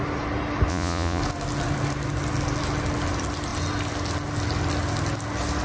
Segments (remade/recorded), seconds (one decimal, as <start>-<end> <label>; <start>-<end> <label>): 0.0-0.7 recorded; 0.7-1.2 remade; 1.2-5.6 recorded